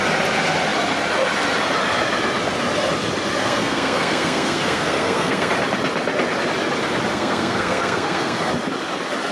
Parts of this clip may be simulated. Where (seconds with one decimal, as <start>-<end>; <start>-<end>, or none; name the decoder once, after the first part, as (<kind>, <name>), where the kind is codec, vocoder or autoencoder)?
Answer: 3.4-5.5 (codec, SNAC); 7.1-8.5

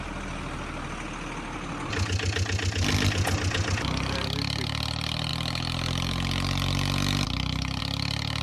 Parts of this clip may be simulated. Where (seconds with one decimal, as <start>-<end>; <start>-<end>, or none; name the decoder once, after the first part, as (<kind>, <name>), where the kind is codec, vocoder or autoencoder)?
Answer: none

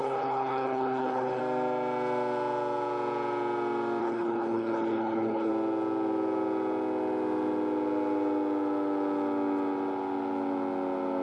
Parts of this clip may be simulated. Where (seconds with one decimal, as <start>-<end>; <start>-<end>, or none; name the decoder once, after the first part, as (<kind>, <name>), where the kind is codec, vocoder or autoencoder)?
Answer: 0.0-1.4 (codec, HILCodec); 4.0-5.5